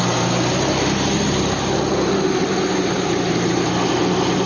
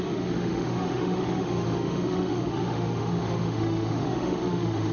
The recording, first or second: first